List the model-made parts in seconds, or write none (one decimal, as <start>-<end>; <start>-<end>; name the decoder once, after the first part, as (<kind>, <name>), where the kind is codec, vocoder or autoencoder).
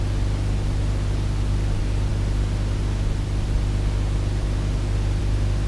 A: none